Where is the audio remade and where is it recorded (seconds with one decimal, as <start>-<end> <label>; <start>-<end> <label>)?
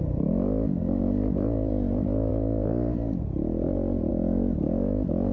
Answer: 0.0-5.3 recorded